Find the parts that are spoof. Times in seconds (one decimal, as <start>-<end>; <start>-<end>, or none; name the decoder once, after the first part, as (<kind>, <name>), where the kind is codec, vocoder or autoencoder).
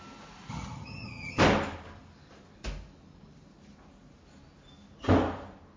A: 0.5-1.4 (vocoder, HiFi-GAN)